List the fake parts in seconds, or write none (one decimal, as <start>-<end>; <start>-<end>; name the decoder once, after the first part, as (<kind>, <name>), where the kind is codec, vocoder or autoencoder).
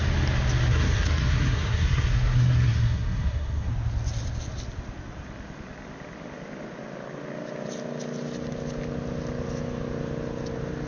0.7-3.7 (codec, SNAC)